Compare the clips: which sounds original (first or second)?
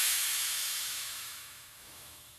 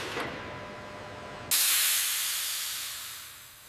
second